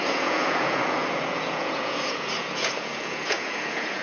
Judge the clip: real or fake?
fake